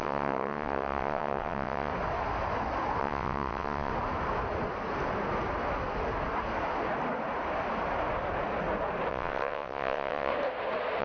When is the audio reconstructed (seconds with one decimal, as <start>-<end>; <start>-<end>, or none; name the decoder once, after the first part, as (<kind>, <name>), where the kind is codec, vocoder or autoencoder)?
0.0-1.9 (vocoder, WaveNeXt); 3.0-3.9; 9.1-10.3